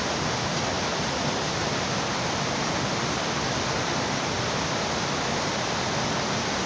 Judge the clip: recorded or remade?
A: recorded